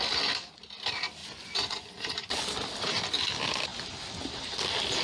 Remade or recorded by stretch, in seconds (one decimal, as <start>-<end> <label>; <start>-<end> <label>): 0.0-1.2 recorded; 1.2-2.2 remade; 2.2-5.0 recorded

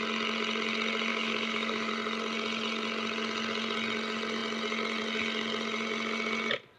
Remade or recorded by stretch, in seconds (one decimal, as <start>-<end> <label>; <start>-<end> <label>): 0.0-1.1 recorded; 1.1-1.9 remade; 1.9-6.8 recorded

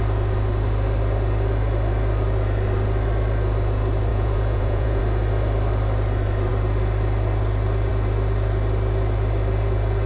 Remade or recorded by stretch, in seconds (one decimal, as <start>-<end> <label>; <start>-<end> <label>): 0.0-4.1 recorded; 4.1-5.0 remade; 5.0-10.1 recorded

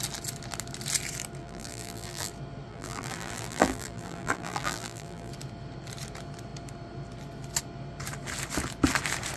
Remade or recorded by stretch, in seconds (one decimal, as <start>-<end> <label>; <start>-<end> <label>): 0.0-1.4 recorded; 1.4-2.3 remade; 2.3-2.7 recorded; 2.7-5.3 remade; 5.3-9.4 recorded

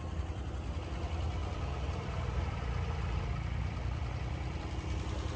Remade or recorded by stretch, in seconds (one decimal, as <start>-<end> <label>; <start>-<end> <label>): 0.0-1.4 recorded; 1.4-4.6 remade; 4.6-5.4 recorded

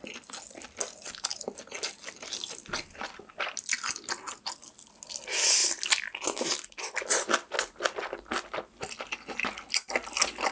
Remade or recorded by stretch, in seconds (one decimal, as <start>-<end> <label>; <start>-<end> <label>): 0.0-10.5 recorded